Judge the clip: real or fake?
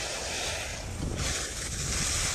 real